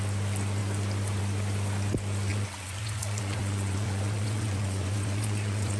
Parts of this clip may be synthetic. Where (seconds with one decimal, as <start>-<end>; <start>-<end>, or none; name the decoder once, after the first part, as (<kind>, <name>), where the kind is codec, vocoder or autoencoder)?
2.3-5.8 (vocoder, Vocos)